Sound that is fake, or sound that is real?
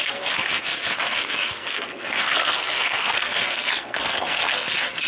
fake